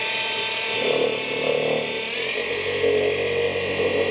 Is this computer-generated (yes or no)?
no